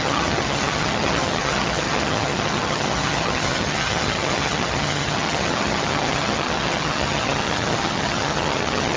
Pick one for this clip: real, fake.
fake